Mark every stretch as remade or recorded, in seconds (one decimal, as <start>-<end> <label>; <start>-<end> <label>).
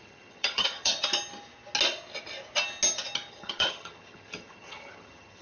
0.0-0.9 remade; 0.9-3.3 recorded; 3.3-5.4 remade